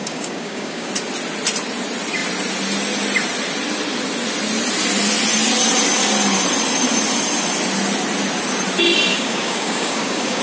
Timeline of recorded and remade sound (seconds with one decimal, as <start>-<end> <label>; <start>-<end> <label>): 0.0-0.9 remade; 0.9-9.1 recorded; 9.1-10.4 remade